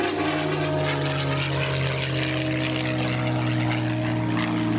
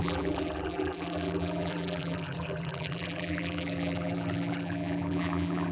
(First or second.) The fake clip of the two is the second